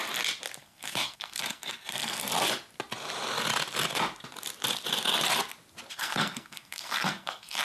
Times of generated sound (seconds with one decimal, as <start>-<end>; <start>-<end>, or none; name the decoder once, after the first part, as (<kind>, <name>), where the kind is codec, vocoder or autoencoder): 0.6-2.2 (codec, SNAC); 5.9-7.6